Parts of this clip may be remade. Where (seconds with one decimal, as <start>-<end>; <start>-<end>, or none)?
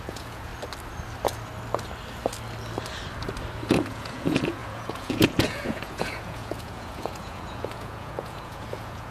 0.0-0.5; 3.6-9.1